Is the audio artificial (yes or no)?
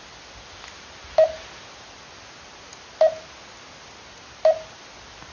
no